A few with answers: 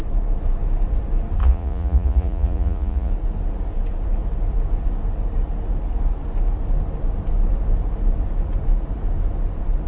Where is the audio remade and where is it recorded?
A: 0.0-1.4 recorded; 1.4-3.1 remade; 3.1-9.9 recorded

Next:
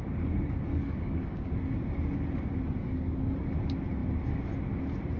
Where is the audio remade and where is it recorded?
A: 0.0-0.7 recorded; 0.7-1.5 remade; 1.5-2.8 recorded; 2.8-3.5 remade; 3.5-5.2 recorded

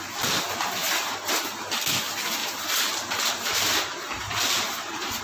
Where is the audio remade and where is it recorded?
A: 0.0-0.8 recorded; 0.8-1.4 remade; 1.4-2.4 recorded; 2.4-5.2 remade

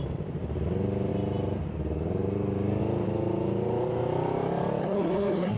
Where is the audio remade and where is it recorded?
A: 0.0-4.8 recorded; 4.8-5.6 remade

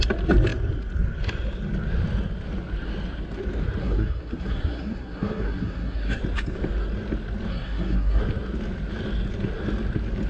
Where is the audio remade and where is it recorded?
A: 0.0-3.8 recorded; 3.8-6.2 remade; 6.2-7.5 recorded; 7.5-8.2 remade; 8.2-10.3 recorded

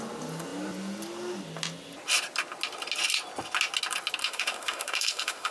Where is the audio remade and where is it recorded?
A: 0.0-4.2 recorded; 4.2-5.5 remade

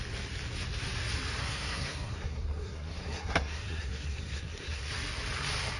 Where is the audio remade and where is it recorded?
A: 0.0-1.4 recorded; 1.4-4.9 remade; 4.9-5.8 recorded